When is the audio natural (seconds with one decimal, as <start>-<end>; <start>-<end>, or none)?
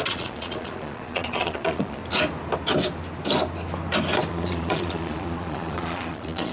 2.0-4.3